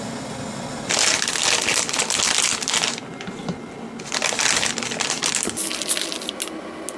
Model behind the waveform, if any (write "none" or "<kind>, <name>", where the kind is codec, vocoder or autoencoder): none